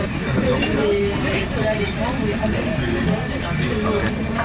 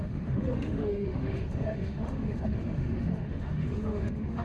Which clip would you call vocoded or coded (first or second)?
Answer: second